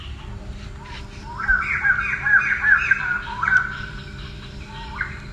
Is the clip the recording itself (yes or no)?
no